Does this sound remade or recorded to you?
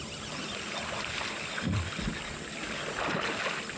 recorded